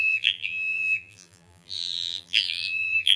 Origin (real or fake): fake